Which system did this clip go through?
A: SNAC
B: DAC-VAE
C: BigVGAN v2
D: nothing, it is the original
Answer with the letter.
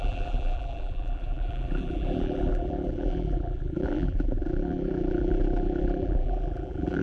C